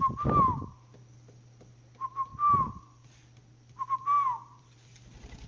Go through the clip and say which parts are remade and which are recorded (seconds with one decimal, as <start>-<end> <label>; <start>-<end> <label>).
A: 0.0-5.5 recorded